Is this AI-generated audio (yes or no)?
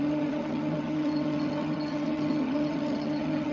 yes